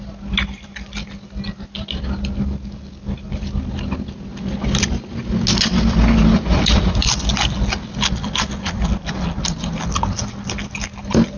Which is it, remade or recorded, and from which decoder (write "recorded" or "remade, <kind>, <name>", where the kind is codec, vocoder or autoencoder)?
recorded